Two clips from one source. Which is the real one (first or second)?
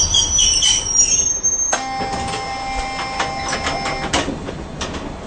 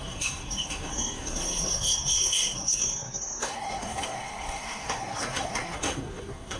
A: first